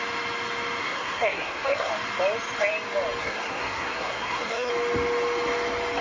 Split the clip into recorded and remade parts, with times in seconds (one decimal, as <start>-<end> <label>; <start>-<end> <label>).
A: 0.0-0.8 recorded; 0.8-1.9 remade; 1.9-3.2 recorded; 3.2-4.7 remade; 4.7-6.0 recorded